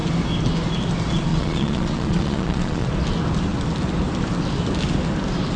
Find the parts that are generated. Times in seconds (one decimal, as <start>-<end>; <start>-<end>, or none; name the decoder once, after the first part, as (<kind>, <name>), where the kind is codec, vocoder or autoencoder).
1.3-2.9 (vocoder, Vocos)